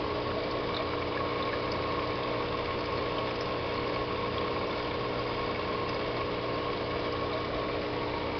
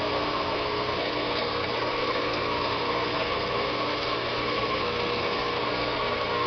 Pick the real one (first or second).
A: first